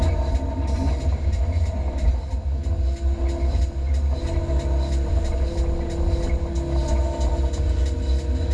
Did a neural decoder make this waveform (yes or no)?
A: no